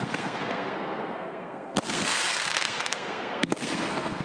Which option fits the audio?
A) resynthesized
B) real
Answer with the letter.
A